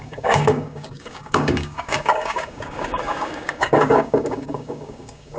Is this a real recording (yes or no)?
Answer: no